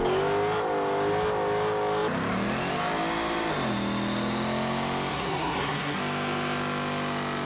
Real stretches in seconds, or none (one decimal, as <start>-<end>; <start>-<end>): 0.0-5.1; 6.0-7.5